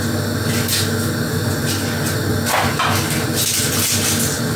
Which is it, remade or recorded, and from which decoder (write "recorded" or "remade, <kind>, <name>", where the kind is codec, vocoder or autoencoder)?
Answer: recorded